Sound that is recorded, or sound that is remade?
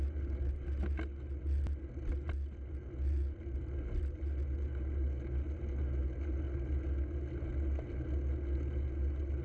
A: recorded